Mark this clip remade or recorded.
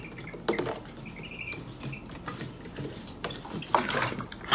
recorded